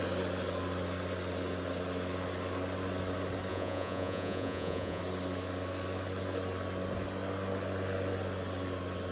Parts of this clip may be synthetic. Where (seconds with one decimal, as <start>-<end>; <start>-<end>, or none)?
3.5-5.0